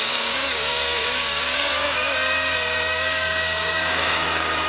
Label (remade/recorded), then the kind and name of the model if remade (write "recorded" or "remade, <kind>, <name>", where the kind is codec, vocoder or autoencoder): remade, codec, DAC